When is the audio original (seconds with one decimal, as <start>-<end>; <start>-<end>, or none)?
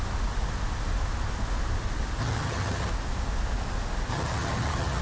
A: 0.0-2.2; 2.9-4.1